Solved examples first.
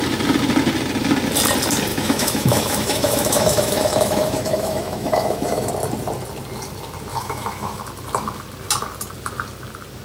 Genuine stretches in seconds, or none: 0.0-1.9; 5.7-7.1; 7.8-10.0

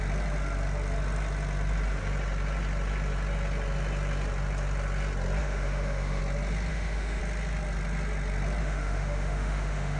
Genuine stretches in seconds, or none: 0.0-5.4; 6.2-6.7; 7.2-8.6

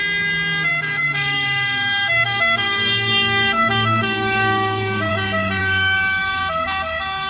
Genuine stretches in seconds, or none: 0.0-0.7; 5.1-5.6; 6.4-7.3

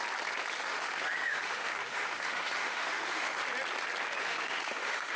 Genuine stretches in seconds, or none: 0.0-0.6; 3.4-4.2

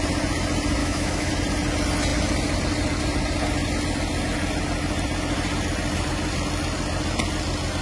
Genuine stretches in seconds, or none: 0.0-0.8; 1.3-7.8

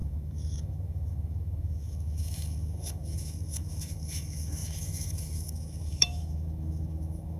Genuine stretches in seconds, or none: none